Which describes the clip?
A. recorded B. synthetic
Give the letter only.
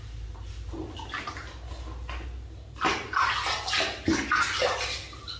A